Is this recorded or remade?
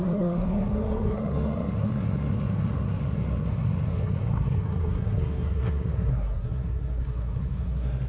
remade